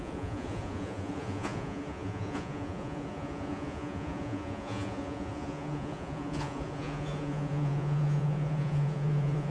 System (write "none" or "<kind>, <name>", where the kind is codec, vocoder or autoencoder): vocoder, Vocos